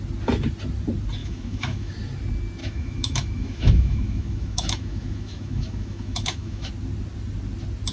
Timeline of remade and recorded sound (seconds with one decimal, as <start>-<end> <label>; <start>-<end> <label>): 0.0-1.2 recorded; 1.2-1.9 remade; 1.9-2.6 recorded; 2.6-6.7 remade; 6.7-7.9 recorded